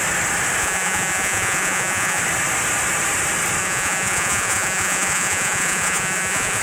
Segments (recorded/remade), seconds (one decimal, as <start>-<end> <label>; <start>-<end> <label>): 0.0-0.6 recorded; 0.6-2.2 remade; 2.2-3.6 recorded; 3.6-6.6 remade